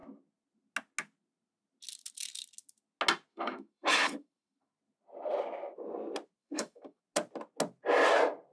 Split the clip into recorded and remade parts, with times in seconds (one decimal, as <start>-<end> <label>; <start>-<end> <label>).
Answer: 0.0-3.3 recorded; 3.3-4.7 remade; 4.7-6.4 recorded; 6.4-7.0 remade; 7.0-8.5 recorded